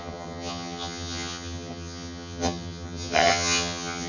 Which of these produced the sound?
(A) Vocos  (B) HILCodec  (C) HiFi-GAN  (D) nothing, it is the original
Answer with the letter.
C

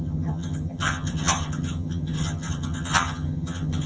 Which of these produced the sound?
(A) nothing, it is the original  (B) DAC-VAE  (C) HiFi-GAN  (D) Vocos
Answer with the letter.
C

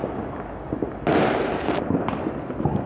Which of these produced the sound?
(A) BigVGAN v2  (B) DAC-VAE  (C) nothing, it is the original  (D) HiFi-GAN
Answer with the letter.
C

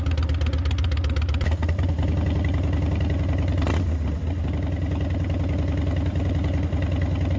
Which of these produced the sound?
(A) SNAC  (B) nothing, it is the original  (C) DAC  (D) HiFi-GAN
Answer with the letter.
B